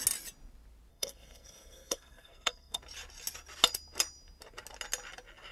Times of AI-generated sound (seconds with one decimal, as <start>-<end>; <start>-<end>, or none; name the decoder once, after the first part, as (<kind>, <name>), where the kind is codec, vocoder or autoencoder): 0.9-2.8 (codec, SNAC)